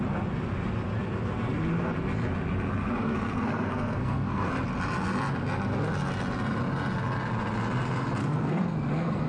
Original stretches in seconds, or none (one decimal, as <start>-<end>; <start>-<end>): 0.0-3.0; 4.5-8.2